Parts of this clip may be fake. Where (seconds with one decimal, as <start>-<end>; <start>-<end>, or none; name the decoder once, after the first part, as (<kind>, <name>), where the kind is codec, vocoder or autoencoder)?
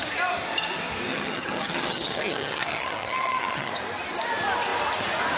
1.1-3.7 (vocoder, HiFi-GAN)